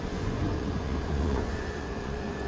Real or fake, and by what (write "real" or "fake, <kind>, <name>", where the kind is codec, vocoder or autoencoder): fake, vocoder, Vocos